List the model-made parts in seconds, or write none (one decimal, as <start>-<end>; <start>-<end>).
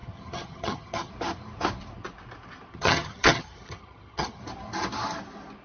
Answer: 0.0-1.1; 2.7-4.4